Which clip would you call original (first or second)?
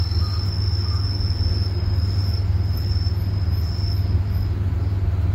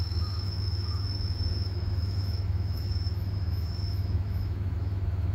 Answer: first